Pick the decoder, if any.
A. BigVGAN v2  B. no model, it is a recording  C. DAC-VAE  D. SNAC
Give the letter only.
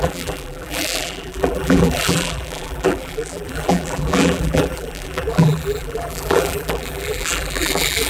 A